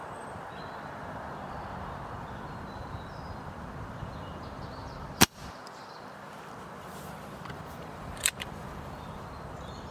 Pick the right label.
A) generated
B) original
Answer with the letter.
A